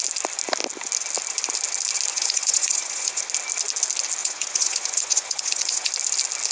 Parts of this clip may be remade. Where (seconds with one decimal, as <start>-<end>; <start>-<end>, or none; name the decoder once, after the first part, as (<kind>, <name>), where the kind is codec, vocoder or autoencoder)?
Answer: 2.1-3.2 (vocoder, Vocos); 4.2-5.9